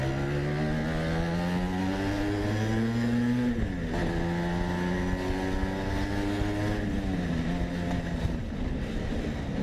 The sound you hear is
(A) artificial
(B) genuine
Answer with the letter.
B